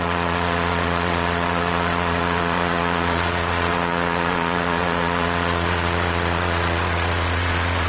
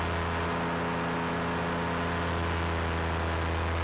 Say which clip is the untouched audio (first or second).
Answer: second